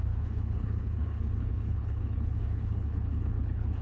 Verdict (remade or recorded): remade